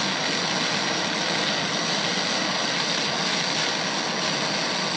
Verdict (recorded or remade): recorded